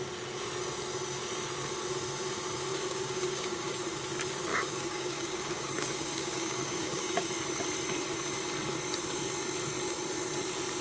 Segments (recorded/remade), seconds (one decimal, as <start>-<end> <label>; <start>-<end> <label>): 0.0-2.7 recorded; 2.7-3.8 remade; 3.8-4.5 recorded; 4.5-7.3 remade; 7.3-10.8 recorded

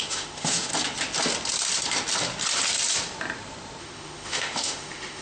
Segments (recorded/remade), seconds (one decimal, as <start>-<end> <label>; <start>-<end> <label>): 0.0-0.7 remade; 0.7-3.8 recorded; 3.8-5.2 remade

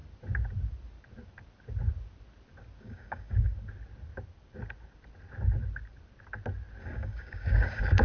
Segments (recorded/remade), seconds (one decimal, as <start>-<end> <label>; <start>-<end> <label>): 0.0-2.8 recorded; 2.8-3.5 remade; 3.5-6.8 recorded; 6.8-8.0 remade

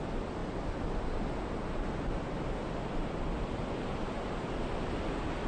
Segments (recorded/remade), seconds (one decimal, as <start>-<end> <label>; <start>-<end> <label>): 0.0-5.5 recorded